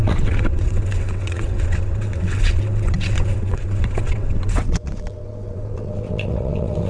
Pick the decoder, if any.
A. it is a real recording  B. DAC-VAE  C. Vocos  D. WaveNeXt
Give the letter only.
D